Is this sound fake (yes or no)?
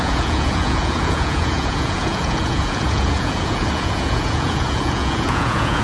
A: yes